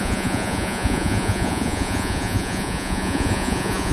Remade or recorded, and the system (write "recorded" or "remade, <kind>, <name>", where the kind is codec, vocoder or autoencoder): remade, vocoder, Vocos